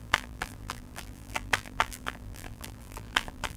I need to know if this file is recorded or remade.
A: remade